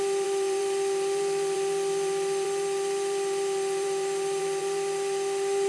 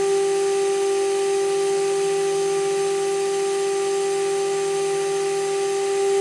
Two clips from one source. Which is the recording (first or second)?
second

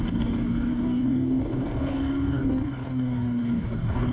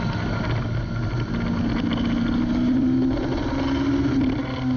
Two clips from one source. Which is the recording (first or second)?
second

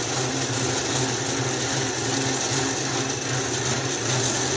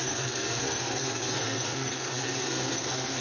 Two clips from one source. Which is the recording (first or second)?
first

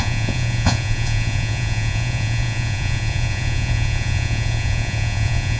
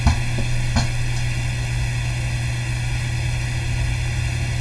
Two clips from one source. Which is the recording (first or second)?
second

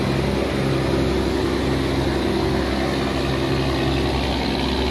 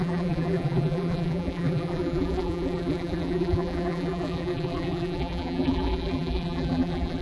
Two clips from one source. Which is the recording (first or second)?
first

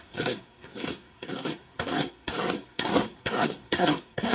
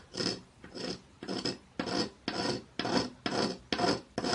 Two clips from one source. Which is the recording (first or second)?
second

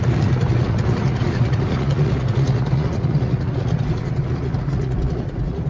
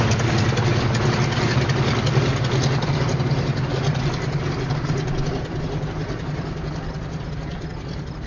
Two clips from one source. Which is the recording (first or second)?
second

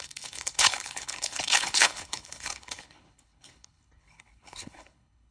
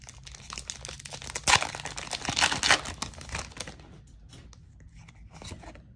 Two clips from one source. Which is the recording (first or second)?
second